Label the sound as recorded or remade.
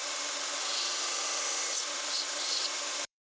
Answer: remade